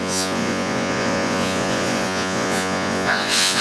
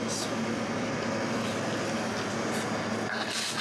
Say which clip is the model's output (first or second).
first